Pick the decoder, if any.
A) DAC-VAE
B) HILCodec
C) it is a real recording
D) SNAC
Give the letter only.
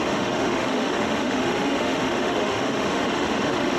A